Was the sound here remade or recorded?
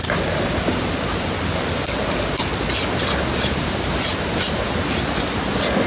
recorded